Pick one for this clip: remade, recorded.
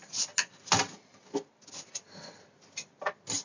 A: recorded